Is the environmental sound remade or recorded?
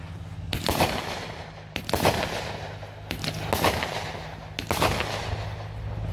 recorded